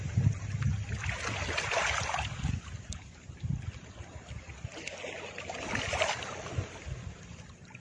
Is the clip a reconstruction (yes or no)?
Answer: no